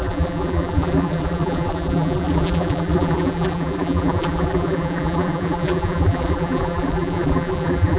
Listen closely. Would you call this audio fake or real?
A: fake